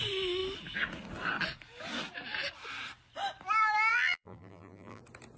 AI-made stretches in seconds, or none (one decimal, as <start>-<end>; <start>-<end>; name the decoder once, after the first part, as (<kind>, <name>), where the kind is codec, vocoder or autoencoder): 3.9-5.0 (vocoder, BigVGAN v2)